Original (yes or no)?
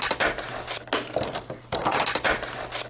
yes